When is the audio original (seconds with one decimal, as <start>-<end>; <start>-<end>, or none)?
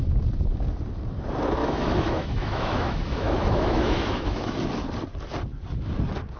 0.0-1.6; 4.5-6.4